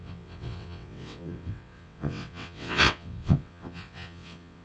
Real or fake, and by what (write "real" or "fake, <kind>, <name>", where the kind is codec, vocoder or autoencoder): fake, vocoder, WaveNeXt